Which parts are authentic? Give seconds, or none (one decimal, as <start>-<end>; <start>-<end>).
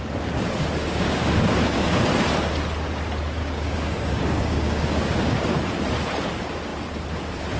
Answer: 0.0-0.8; 1.8-3.4; 5.4-7.6